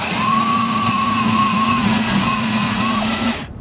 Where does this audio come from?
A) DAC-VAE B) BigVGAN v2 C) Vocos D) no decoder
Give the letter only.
C